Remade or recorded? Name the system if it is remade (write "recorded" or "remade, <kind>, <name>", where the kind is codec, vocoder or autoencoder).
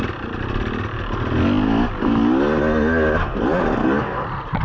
recorded